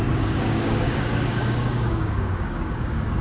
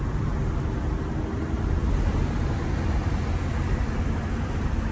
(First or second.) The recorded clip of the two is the second